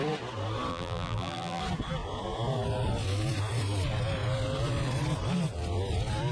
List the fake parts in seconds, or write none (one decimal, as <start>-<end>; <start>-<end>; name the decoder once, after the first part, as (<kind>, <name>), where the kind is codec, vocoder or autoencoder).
0.7-1.6 (vocoder, BigVGAN v2)